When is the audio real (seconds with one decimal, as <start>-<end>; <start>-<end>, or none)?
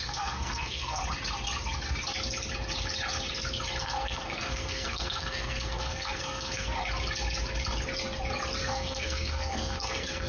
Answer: 1.0-3.8; 6.8-8.6